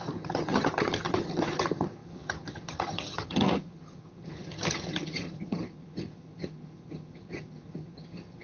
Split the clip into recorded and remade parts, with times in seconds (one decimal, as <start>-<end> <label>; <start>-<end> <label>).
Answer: 0.0-8.4 remade